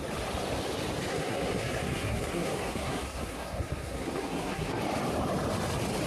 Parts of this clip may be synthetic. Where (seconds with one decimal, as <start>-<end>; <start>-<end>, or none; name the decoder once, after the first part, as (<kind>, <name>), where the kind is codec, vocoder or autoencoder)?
1.1-4.8 (codec, SNAC)